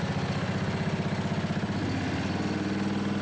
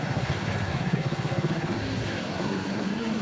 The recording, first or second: first